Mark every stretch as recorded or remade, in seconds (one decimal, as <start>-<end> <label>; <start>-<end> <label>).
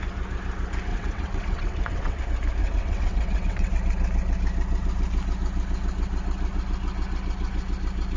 0.0-0.9 recorded; 0.9-2.2 remade; 2.2-2.6 recorded; 2.6-3.7 remade; 3.7-8.2 recorded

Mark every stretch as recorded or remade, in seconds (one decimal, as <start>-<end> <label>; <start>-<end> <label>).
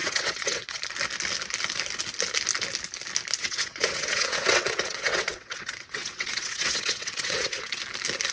0.0-0.8 remade; 0.8-3.4 recorded; 3.4-7.8 remade; 7.8-8.3 recorded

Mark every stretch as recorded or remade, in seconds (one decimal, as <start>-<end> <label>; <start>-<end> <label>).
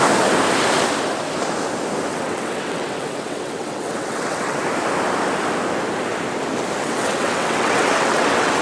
0.0-2.1 recorded; 2.1-4.6 remade; 4.6-6.8 recorded; 6.8-8.6 remade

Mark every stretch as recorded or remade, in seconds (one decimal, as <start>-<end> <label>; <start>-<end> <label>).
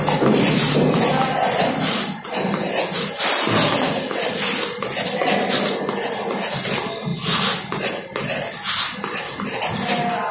0.0-10.3 recorded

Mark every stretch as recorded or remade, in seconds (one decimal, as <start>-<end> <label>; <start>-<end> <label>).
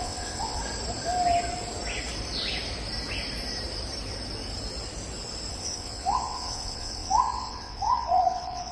0.0-0.6 remade; 0.6-5.5 recorded; 5.5-8.7 remade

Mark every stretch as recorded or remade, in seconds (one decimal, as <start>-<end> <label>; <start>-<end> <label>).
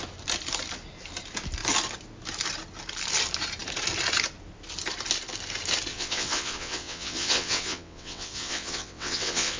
0.0-5.9 recorded; 5.9-9.6 remade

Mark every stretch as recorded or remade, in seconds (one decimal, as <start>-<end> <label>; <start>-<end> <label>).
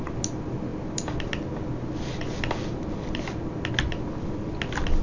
0.0-5.0 recorded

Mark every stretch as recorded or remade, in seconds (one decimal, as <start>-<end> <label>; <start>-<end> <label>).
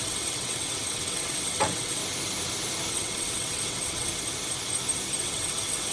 0.0-2.0 remade; 2.0-2.9 recorded; 2.9-4.1 remade; 4.1-5.2 recorded; 5.2-5.9 remade